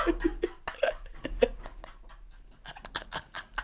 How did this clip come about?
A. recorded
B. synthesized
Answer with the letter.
A